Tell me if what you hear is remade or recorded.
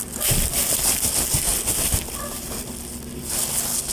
recorded